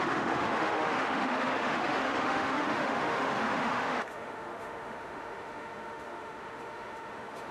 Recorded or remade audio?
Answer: remade